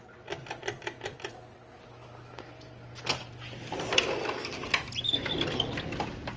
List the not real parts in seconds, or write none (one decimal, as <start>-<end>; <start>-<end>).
none